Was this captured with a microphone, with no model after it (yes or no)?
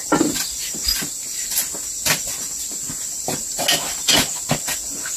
yes